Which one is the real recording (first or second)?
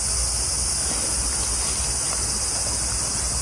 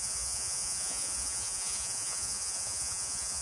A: first